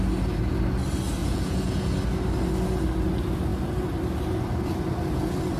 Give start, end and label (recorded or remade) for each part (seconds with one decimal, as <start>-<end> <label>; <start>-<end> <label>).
0.0-1.2 recorded; 1.2-1.9 remade; 1.9-5.6 recorded